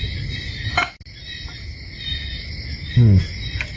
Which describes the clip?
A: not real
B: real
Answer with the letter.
B